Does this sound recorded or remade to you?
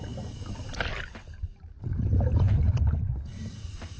remade